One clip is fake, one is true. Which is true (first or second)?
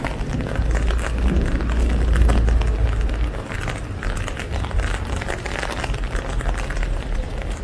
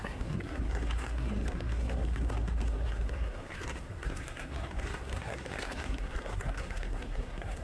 first